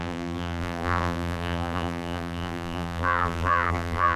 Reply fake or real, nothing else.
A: fake